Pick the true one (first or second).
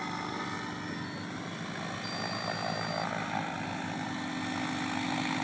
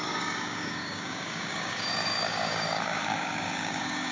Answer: first